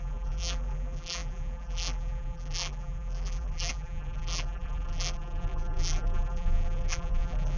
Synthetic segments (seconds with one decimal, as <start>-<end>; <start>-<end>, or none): 0.0-7.6